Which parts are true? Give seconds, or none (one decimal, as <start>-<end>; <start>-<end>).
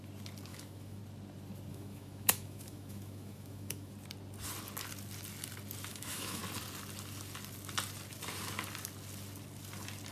0.0-0.5; 1.0-1.7; 3.9-5.9; 6.4-10.1